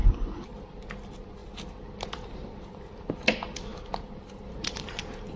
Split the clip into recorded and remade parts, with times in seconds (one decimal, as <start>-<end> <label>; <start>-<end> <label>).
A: 0.0-5.4 recorded